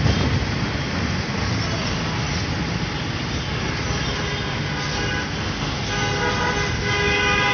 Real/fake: real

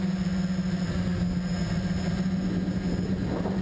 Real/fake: real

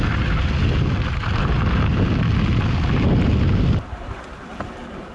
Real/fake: real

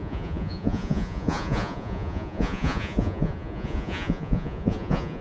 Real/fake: fake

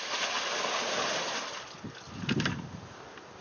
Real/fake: real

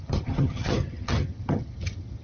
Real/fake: fake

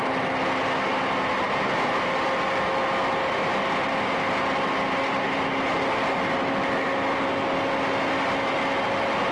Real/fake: real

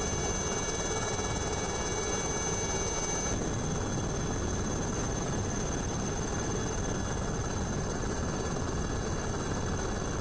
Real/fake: real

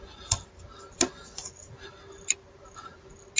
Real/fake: real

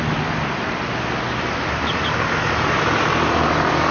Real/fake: real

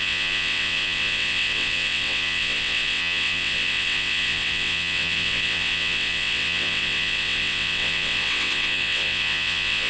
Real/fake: fake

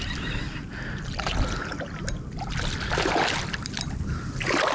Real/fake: real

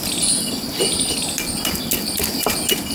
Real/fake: real